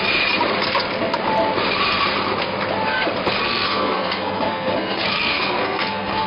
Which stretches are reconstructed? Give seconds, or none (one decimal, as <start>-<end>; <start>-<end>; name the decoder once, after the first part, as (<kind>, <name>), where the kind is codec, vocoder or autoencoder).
3.4-6.3 (codec, SNAC)